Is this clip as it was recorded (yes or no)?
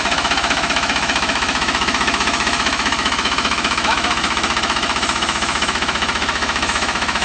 no